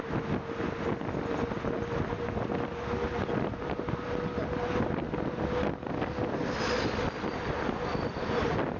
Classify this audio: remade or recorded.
recorded